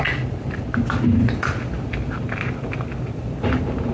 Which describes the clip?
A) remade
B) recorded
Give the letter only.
B